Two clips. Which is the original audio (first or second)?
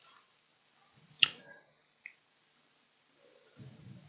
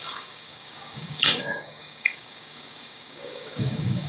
first